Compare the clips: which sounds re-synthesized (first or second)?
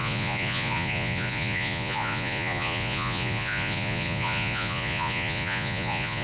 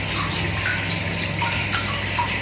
first